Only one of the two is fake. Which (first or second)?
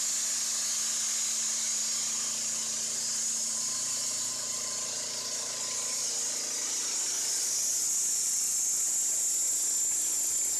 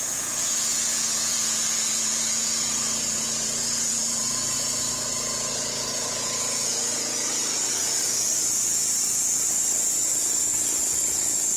second